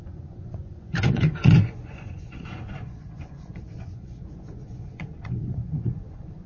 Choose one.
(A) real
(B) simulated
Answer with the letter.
B